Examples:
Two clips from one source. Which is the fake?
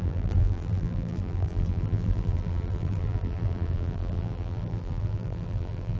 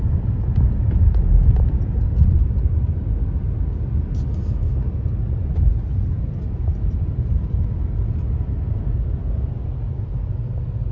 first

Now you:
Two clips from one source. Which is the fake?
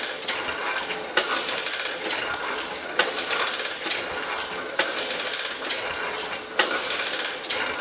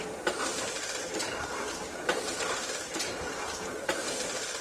second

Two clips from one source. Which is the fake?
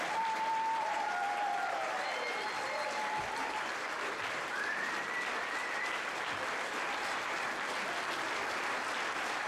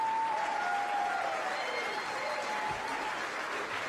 first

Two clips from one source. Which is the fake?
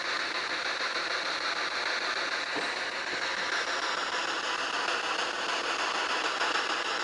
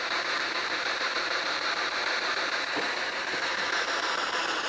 second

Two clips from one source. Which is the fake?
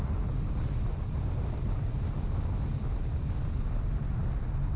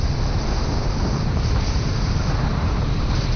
second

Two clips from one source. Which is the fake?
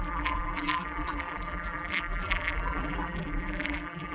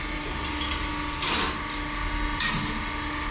first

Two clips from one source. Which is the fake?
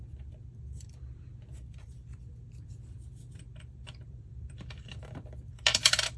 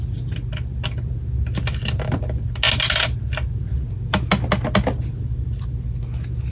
first